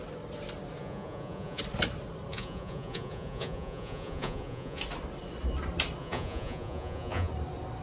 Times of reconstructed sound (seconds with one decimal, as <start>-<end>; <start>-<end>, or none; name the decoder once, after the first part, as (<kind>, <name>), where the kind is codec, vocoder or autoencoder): 0.8-1.6 (vocoder, Vocos); 2.3-4.8; 6.0-7.3

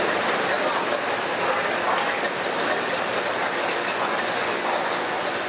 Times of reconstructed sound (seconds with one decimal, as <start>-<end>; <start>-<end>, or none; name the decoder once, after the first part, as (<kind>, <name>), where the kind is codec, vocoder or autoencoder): 3.9-5.5 (vocoder, Vocos)

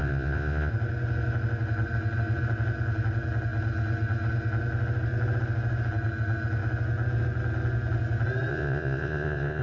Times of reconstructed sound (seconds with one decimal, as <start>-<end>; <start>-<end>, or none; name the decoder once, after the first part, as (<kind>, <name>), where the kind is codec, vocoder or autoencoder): 0.0-0.7 (vocoder, Vocos); 8.5-9.6

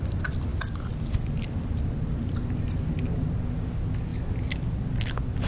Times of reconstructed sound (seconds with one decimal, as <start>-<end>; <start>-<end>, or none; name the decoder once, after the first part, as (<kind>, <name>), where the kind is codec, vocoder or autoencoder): none

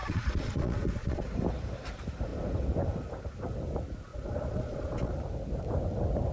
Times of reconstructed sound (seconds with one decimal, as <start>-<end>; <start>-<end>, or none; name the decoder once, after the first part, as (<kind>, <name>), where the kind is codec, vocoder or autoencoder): 0.0-1.2 (vocoder, Vocos); 4.1-5.1

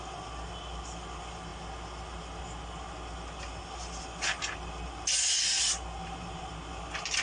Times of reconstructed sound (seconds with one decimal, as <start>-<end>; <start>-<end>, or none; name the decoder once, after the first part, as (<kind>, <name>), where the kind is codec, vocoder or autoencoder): none

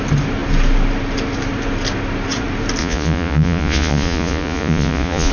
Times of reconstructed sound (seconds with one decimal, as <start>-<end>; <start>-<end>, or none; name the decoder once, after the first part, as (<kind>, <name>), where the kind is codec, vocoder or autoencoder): 2.8-5.3 (vocoder, Vocos)

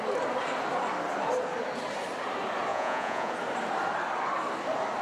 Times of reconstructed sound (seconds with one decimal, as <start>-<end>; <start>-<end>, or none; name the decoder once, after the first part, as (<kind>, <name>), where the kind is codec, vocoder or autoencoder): 2.7-3.3 (vocoder, Vocos)